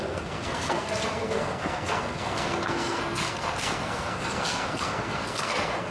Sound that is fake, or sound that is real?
fake